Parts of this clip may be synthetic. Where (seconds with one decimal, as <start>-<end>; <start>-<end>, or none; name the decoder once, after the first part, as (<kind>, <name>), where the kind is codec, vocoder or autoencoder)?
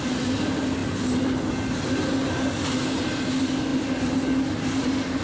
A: none